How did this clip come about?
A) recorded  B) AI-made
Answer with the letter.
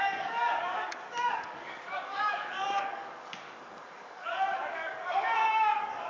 B